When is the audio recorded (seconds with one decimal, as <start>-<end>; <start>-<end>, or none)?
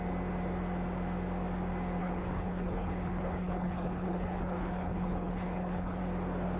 0.0-2.0; 6.0-6.6